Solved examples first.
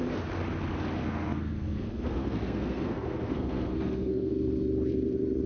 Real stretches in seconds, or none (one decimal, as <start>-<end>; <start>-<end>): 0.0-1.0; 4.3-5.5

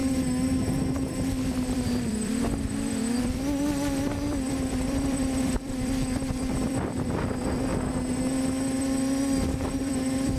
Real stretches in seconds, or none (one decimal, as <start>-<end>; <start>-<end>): 0.0-1.5; 7.7-8.8

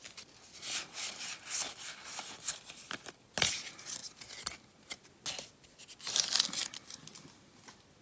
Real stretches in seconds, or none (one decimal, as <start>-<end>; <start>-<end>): 0.0-8.0

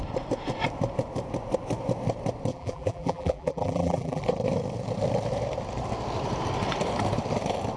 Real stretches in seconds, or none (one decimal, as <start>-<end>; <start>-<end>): 0.0-2.5; 4.2-7.8